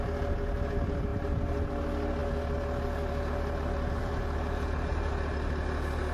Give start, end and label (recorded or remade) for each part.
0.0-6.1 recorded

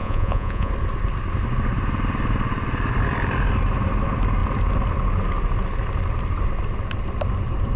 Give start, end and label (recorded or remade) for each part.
0.0-0.7 remade; 0.7-7.8 recorded

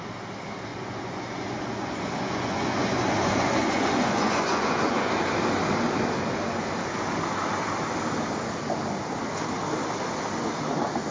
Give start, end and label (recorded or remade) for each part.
0.0-0.7 recorded; 0.7-5.1 remade; 5.1-11.1 recorded

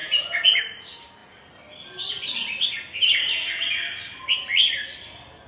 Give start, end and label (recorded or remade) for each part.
0.0-0.6 remade; 0.6-5.5 recorded

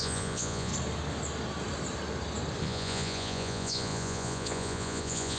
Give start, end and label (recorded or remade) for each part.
0.0-0.7 remade; 0.7-2.6 recorded; 2.6-5.4 remade

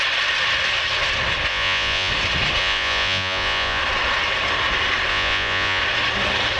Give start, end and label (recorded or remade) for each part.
0.0-1.5 recorded; 1.5-2.1 remade; 2.1-2.6 recorded; 2.6-3.8 remade; 3.8-5.1 recorded; 5.1-5.8 remade; 5.8-6.6 recorded

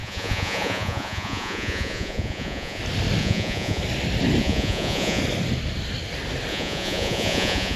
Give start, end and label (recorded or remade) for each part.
0.0-2.8 remade; 2.8-3.2 recorded; 3.2-3.8 remade; 3.8-4.4 recorded; 4.4-5.2 remade; 5.2-6.5 recorded; 6.5-7.8 remade

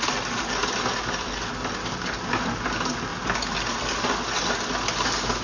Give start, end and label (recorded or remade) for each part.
0.0-5.4 recorded